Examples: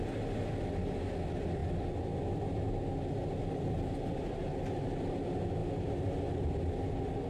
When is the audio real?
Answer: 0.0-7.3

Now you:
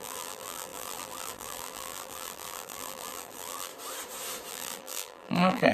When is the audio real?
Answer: 3.7-4.5

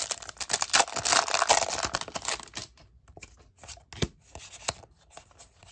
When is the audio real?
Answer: 0.0-5.7

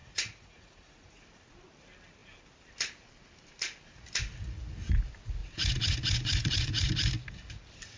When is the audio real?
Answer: 1.2-5.4; 6.9-8.0

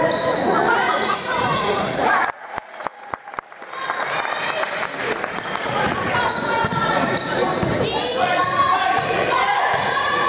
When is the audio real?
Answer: 3.3-5.1; 7.5-8.1